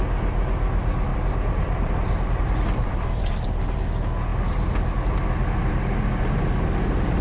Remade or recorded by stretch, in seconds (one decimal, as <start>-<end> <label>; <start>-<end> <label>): 0.0-1.1 recorded; 1.1-3.8 remade; 3.8-7.2 recorded